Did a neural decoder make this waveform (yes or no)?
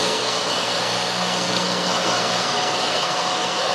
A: yes